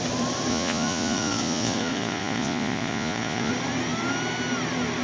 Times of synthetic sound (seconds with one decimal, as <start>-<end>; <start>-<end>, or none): 0.5-3.5